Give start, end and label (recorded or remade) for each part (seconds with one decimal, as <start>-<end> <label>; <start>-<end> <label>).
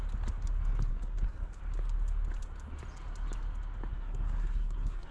0.0-0.9 recorded; 0.9-1.6 remade; 1.6-3.9 recorded; 3.9-5.1 remade